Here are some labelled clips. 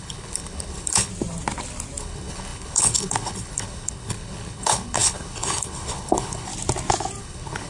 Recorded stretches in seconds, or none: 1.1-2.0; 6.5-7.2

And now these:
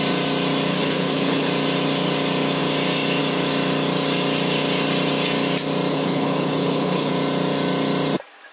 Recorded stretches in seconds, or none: 0.0-0.7; 1.5-5.9; 7.1-8.5

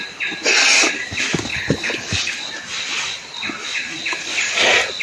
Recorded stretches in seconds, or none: 0.0-1.5; 2.3-5.0

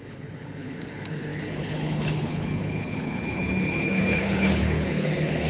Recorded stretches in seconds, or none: none

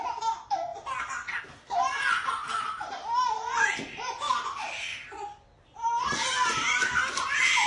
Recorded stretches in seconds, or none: 0.0-7.7

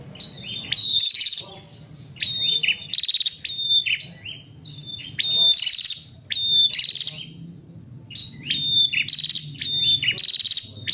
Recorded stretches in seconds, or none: 0.0-0.8; 1.4-10.9

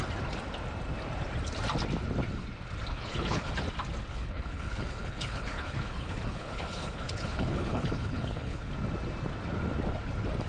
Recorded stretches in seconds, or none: 0.0-2.9; 3.5-4.1; 8.7-10.5